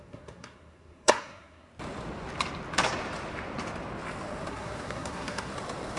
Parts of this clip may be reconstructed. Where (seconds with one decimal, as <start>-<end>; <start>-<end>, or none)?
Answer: 0.0-1.7; 4.5-5.5